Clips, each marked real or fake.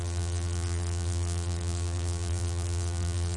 fake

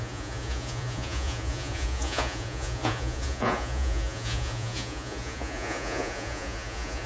fake